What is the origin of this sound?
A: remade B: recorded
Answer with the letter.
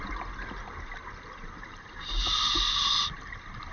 B